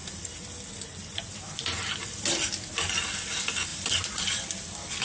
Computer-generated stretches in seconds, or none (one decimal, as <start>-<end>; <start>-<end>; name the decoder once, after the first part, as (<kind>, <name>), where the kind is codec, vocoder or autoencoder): none